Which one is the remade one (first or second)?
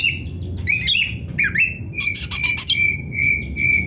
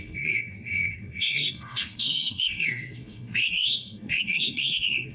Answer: second